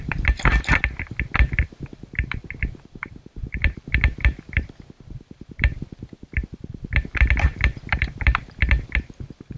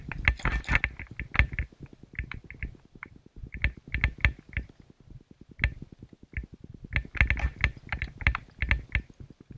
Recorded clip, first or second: second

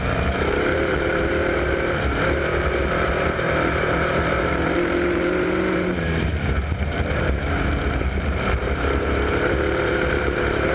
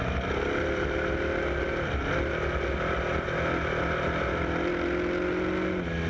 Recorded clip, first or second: second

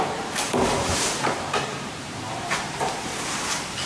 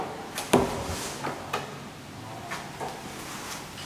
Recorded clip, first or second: second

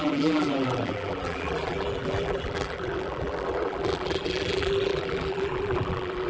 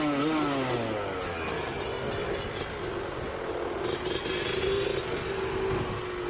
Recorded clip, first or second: second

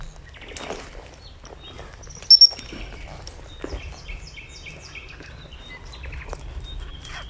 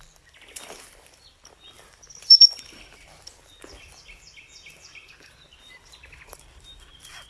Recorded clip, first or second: first